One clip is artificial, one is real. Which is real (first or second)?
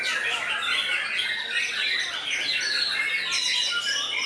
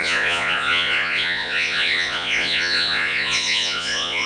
first